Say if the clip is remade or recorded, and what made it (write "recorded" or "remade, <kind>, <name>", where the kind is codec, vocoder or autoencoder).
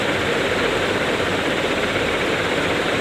remade, vocoder, BigVGAN v2